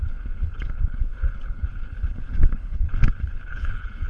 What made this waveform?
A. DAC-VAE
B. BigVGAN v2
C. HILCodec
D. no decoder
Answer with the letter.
C